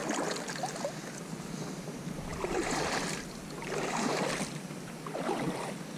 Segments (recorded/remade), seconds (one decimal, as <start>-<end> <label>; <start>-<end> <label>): 0.0-1.2 recorded; 1.2-6.0 remade